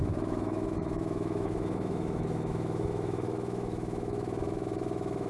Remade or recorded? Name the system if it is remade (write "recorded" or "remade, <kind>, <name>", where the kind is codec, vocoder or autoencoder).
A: remade, autoencoder, DAC-VAE